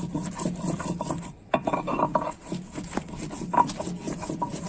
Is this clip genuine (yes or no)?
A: yes